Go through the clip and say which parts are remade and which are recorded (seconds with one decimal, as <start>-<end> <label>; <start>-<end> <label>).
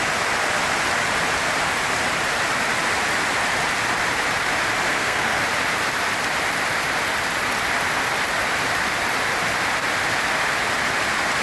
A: 0.0-4.9 recorded; 4.9-5.4 remade; 5.4-11.4 recorded